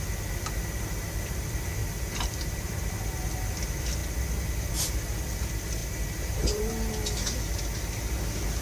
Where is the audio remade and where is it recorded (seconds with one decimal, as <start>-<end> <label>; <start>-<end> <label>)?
0.0-1.8 recorded; 1.8-3.0 remade; 3.0-5.8 recorded; 5.8-6.7 remade; 6.7-8.6 recorded